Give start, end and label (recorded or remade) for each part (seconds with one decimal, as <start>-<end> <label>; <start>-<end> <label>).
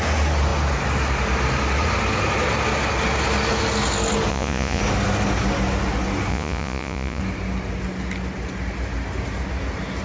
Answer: 0.0-4.3 recorded; 4.3-4.8 remade; 4.8-6.3 recorded; 6.3-7.2 remade; 7.2-10.0 recorded